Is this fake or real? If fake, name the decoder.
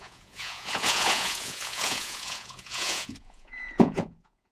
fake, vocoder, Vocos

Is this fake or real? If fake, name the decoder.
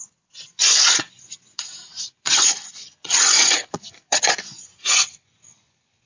fake, vocoder, Vocos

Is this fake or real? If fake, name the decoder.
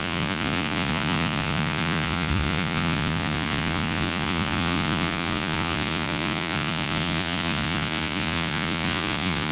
fake, vocoder, Vocos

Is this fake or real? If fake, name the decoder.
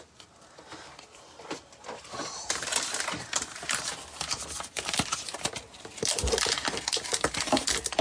real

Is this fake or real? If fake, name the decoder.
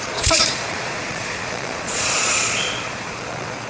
fake, vocoder, Vocos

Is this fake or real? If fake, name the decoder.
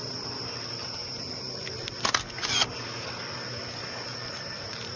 real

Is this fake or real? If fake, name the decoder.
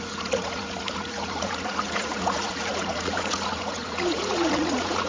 fake, vocoder, Vocos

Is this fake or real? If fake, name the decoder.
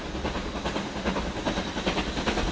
real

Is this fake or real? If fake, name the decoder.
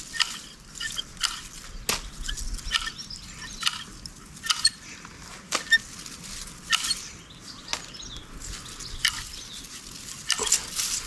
real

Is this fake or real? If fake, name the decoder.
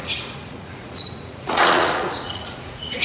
fake, vocoder, Vocos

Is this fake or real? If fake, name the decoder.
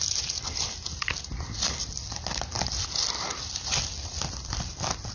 real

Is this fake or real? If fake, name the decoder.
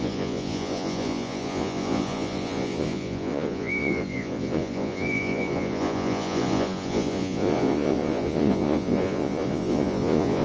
fake, vocoder, Vocos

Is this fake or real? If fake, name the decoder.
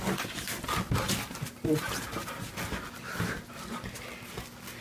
real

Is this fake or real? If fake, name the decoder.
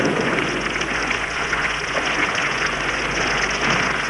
fake, vocoder, Vocos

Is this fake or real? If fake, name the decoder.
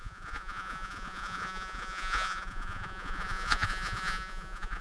fake, vocoder, Vocos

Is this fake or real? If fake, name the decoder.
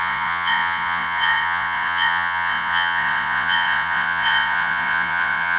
fake, vocoder, Vocos